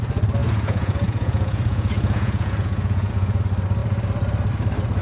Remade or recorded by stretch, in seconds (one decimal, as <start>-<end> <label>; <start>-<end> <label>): 0.0-0.4 recorded; 0.4-3.4 remade; 3.4-5.0 recorded